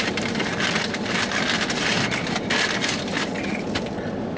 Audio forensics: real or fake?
real